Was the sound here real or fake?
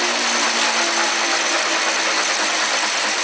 real